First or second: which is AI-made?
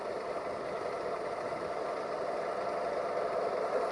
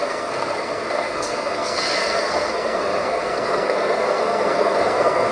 second